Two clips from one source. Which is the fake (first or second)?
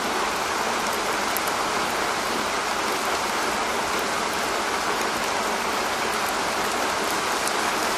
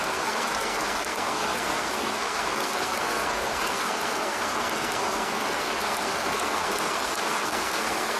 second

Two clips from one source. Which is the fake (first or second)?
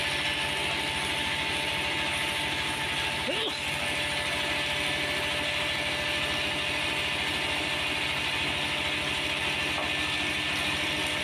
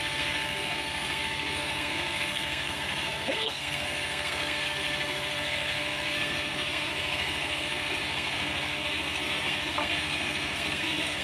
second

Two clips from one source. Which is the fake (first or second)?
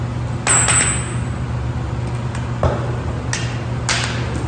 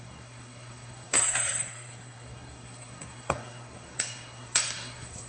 second